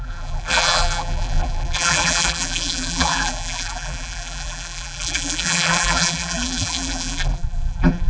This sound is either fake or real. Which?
fake